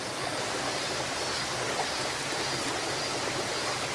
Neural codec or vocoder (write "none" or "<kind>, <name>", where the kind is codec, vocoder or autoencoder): none